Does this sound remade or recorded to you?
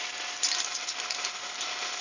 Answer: recorded